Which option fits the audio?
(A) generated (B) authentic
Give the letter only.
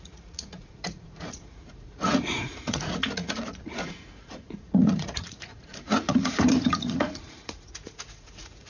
A